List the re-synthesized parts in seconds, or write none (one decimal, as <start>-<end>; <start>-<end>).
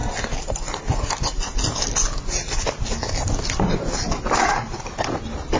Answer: none